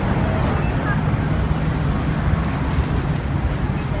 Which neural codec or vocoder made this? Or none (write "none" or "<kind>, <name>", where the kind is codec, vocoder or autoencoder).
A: none